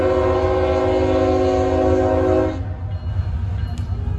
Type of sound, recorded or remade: recorded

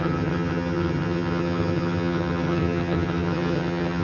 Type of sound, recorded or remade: remade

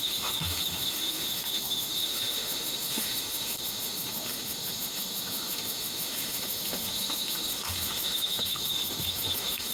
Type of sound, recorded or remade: remade